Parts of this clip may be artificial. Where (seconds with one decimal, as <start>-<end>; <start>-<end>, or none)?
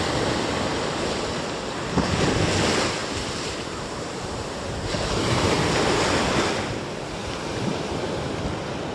3.0-6.0; 7.2-7.9